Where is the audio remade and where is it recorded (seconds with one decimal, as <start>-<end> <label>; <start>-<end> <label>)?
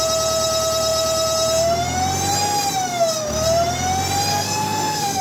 0.0-4.3 recorded; 4.3-5.2 remade